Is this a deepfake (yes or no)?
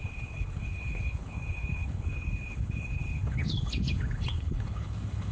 yes